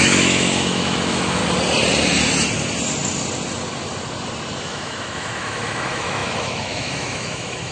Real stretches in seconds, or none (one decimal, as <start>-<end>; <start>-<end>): 1.4-4.6